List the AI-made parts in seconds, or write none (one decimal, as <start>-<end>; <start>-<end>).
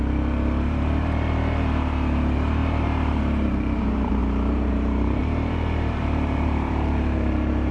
0.0-7.7